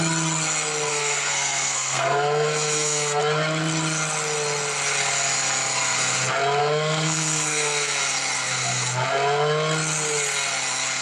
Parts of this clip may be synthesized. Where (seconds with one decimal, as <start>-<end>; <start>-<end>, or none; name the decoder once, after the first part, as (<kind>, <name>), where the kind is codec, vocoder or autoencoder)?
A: 0.9-3.2 (codec, SNAC); 6.6-8.0